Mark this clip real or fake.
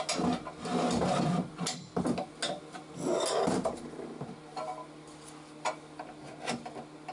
real